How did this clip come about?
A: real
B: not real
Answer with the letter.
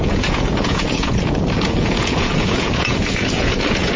B